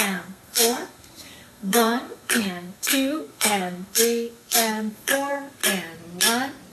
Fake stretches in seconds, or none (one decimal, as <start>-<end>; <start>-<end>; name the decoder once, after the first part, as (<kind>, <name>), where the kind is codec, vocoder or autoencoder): 0.0-5.6 (codec, SNAC)